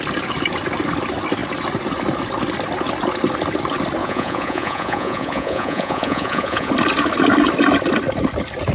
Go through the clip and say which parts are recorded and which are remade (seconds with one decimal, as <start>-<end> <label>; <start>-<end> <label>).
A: 0.0-4.0 recorded; 4.0-6.7 remade; 6.7-8.7 recorded